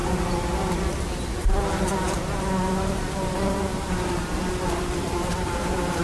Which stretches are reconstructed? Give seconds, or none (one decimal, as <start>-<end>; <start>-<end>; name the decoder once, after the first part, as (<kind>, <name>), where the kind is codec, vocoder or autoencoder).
0.0-6.0 (vocoder, BigVGAN v2)